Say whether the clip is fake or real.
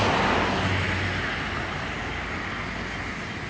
real